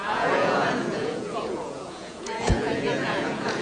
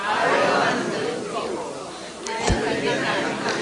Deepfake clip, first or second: first